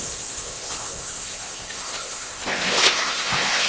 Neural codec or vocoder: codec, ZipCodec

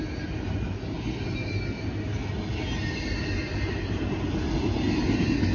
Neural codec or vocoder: none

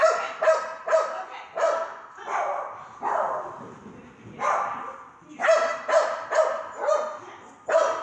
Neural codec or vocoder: none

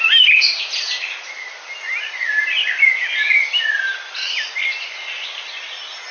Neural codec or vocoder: none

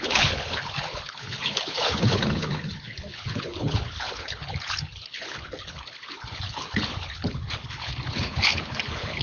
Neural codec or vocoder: codec, HILCodec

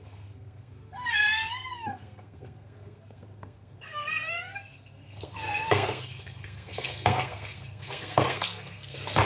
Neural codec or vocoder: codec, SNAC